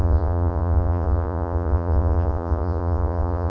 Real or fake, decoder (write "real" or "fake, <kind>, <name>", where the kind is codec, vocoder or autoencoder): fake, vocoder, Vocos